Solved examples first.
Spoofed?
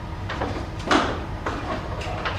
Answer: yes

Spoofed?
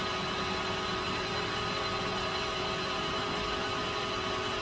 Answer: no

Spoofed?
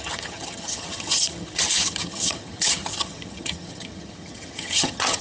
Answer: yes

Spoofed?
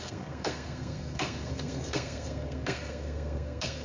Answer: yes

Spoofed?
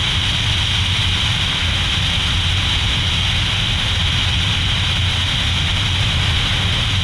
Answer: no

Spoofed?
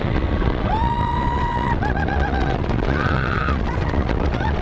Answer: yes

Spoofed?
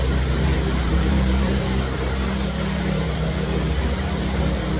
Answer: yes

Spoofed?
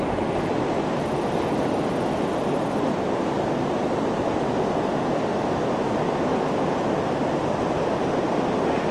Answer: no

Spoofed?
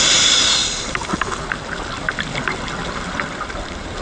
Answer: no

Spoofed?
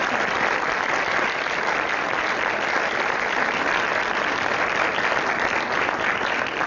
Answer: no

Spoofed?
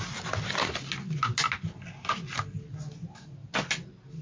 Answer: no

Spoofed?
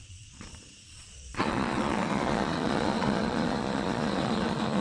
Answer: yes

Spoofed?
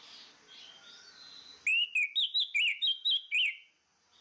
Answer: no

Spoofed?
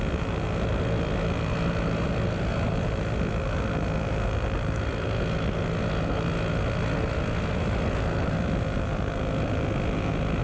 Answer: no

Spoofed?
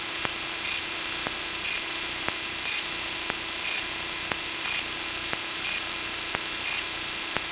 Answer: no